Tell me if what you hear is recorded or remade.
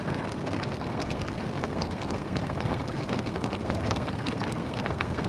remade